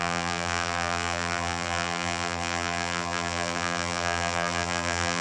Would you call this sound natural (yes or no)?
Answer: no